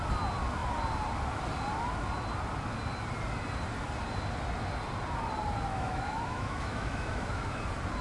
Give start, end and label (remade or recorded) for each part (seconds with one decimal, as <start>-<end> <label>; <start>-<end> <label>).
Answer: 0.0-5.7 recorded; 5.7-7.6 remade; 7.6-8.0 recorded